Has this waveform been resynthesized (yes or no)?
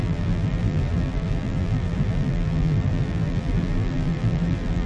yes